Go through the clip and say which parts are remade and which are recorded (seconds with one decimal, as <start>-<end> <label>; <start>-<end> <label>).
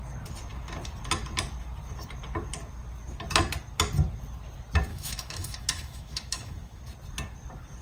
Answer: 0.0-4.9 recorded; 4.9-6.8 remade; 6.8-7.8 recorded